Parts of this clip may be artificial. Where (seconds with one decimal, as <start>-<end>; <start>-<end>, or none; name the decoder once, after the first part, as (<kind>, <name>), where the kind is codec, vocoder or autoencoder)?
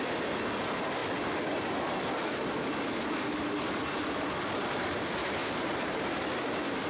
5.4-6.2 (vocoder, BigVGAN v2)